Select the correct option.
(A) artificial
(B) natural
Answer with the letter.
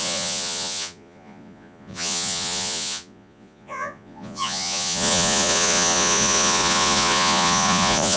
A